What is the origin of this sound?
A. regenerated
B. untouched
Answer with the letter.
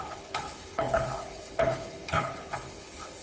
A